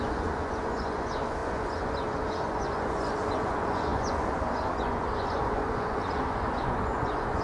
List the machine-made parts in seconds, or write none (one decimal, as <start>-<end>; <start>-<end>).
0.0-7.4